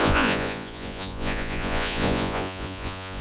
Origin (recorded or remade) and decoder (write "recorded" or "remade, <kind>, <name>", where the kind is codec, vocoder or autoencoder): remade, vocoder, Vocos